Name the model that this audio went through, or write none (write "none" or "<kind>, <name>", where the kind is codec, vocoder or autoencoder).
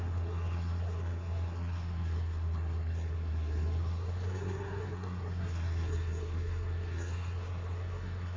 codec, SNAC